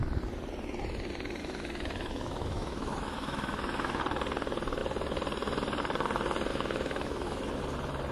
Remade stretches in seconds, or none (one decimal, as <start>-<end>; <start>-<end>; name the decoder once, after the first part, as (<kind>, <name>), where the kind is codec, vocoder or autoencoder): 1.4-4.0 (autoencoder, DAC-VAE); 6.5-7.4